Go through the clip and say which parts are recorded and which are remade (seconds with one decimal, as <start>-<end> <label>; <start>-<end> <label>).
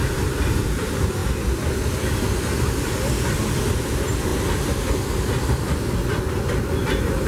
0.0-1.2 remade; 1.2-3.7 recorded; 3.7-4.3 remade; 4.3-6.8 recorded; 6.8-7.3 remade